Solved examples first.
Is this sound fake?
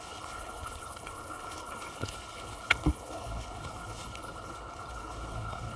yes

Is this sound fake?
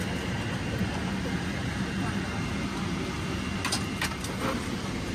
no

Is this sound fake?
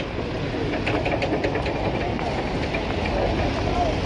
no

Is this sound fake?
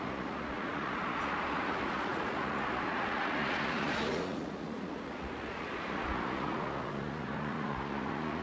yes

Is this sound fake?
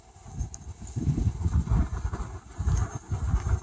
no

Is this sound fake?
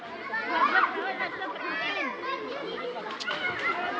no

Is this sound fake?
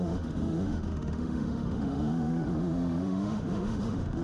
yes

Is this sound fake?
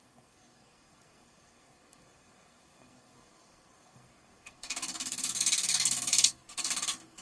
yes